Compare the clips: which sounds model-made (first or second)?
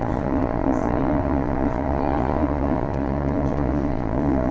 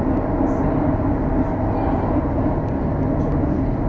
first